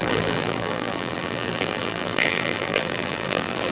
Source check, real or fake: fake